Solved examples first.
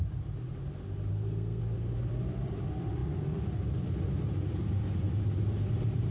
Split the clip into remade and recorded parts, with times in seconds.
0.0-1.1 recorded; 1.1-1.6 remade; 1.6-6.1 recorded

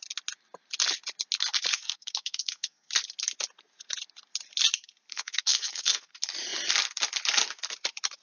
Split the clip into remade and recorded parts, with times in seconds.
0.0-1.7 recorded; 1.7-2.9 remade; 2.9-5.1 recorded; 5.1-6.1 remade; 6.1-8.2 recorded

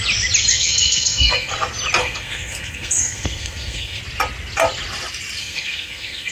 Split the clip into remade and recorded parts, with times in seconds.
0.0-0.5 recorded; 0.5-1.5 remade; 1.5-2.0 recorded; 2.0-4.0 remade; 4.0-5.4 recorded; 5.4-6.3 remade

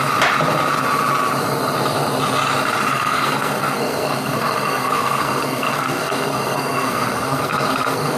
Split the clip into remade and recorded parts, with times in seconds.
0.0-2.9 recorded; 2.9-8.2 remade